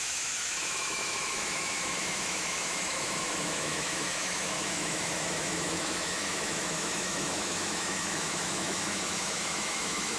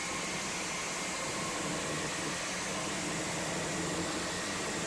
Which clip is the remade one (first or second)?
first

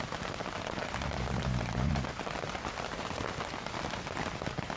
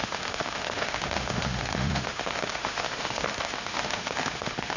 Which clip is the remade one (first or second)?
second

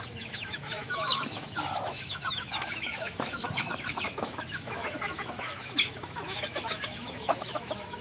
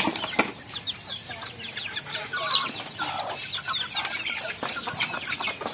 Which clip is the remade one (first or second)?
first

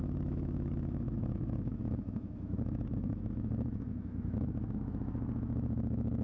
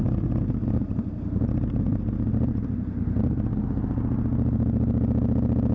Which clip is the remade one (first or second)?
first